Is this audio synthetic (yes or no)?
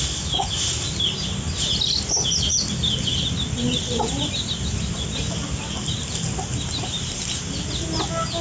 no